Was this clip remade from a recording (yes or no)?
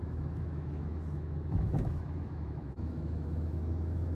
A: yes